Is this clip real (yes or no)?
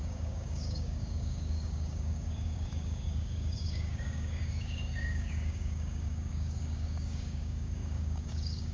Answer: no